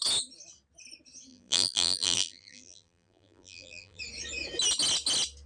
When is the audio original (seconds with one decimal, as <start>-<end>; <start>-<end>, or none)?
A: 0.0-1.3; 4.0-5.5